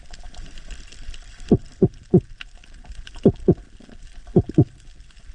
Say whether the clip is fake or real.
fake